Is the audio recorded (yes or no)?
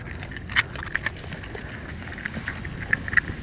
yes